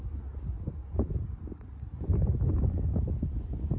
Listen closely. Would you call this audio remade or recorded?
recorded